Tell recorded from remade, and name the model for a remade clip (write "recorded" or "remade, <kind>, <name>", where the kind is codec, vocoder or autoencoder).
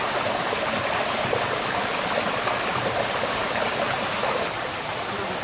recorded